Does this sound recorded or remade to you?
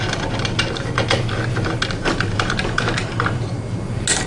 recorded